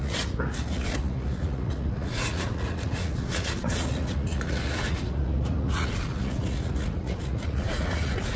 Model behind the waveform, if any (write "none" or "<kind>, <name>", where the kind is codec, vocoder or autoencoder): vocoder, Vocos